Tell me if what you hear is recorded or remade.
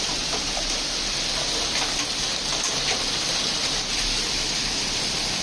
recorded